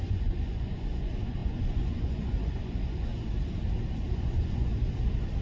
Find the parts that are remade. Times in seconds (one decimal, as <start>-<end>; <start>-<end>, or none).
0.0-3.1; 4.1-4.7